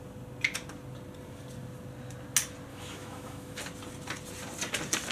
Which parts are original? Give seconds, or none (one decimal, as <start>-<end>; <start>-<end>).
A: 0.0-2.7; 3.6-5.1

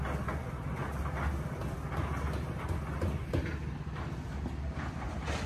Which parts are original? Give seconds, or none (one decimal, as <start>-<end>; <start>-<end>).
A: 0.0-5.5

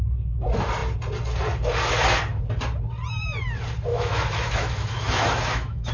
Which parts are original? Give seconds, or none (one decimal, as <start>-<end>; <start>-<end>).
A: 0.0-3.9

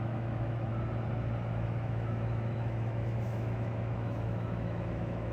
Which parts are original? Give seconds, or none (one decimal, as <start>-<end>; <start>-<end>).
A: 0.7-1.5

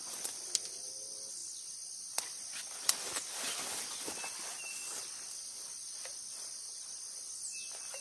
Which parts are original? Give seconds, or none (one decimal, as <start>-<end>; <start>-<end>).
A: 0.0-8.0

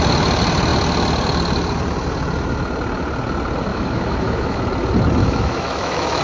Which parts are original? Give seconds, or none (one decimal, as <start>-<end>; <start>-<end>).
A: 0.0-3.7; 4.6-5.2